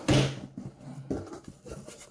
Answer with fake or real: real